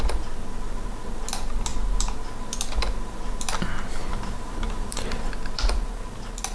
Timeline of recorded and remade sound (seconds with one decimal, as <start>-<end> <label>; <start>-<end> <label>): 0.0-4.0 recorded; 4.0-5.3 remade; 5.3-6.5 recorded